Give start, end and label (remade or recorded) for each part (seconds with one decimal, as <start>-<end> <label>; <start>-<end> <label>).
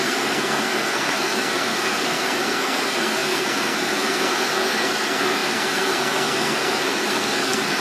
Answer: 0.0-7.8 remade